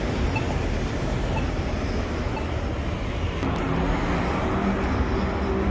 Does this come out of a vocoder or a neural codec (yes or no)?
no